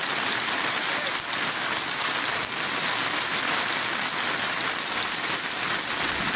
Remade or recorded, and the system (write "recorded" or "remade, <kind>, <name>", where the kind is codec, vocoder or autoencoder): recorded